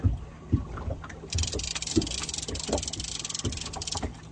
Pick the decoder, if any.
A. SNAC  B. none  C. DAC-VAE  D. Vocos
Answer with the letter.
B